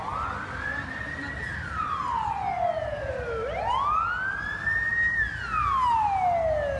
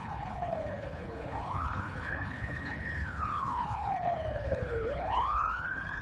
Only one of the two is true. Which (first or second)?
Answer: first